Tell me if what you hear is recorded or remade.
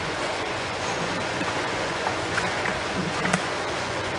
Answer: remade